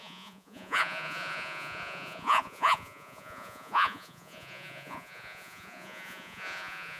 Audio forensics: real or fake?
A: fake